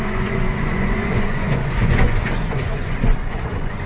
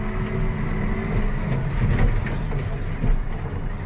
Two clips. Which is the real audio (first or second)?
second